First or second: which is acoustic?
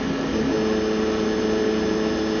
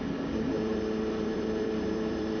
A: first